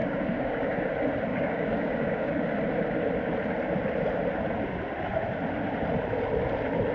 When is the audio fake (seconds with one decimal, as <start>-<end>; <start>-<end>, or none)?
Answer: 0.0-0.9; 1.3-2.4

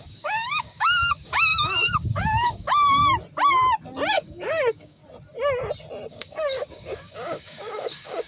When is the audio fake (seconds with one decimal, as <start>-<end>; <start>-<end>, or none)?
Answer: 0.0-3.0; 4.1-5.0; 6.1-8.3

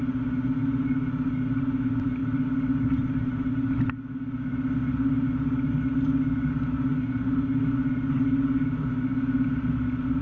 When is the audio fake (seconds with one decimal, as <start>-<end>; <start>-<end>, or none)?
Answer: none

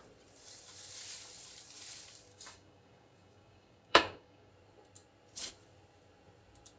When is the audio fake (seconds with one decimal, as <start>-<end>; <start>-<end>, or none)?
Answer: 2.3-4.5

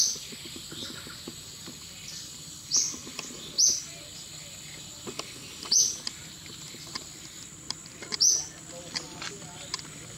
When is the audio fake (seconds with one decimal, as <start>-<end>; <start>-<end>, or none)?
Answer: none